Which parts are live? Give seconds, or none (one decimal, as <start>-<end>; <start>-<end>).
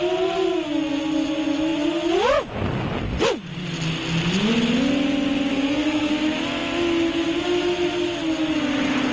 0.0-5.5; 6.1-9.1